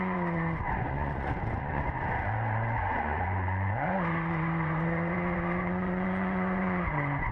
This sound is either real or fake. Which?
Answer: fake